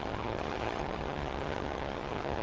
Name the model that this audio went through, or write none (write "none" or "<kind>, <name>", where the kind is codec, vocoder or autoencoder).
vocoder, HiFi-GAN